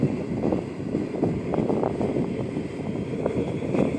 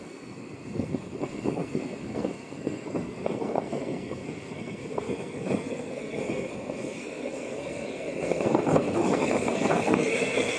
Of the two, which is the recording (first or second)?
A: first